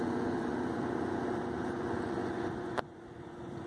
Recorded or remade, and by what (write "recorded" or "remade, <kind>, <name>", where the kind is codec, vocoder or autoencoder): remade, vocoder, Vocos